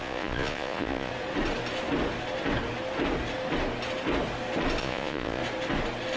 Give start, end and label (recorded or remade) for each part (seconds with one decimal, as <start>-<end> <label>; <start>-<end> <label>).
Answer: 0.0-1.1 remade; 1.1-4.8 recorded; 4.8-5.4 remade; 5.4-6.2 recorded